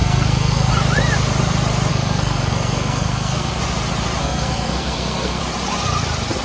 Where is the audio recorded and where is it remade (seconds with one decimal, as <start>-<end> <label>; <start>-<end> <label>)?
0.0-0.7 remade; 0.7-1.9 recorded; 1.9-3.6 remade; 3.6-4.2 recorded; 4.2-5.4 remade; 5.4-6.4 recorded